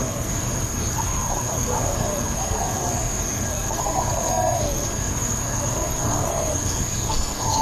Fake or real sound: fake